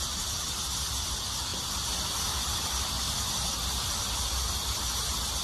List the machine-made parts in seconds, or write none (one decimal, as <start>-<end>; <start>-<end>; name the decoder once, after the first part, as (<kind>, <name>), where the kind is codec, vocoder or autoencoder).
none